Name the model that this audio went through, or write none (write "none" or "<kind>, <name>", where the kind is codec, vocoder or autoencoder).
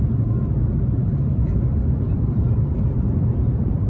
vocoder, BigVGAN v2